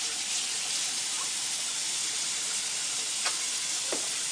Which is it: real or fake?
fake